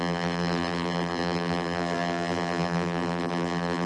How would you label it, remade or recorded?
remade